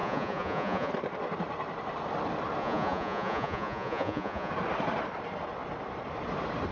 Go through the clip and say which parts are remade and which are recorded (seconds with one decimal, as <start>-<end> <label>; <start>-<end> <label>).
0.0-0.9 remade; 0.9-2.6 recorded; 2.6-4.5 remade; 4.5-6.7 recorded